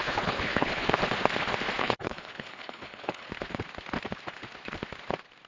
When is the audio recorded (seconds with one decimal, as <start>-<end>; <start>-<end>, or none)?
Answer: 0.9-1.8; 3.3-5.5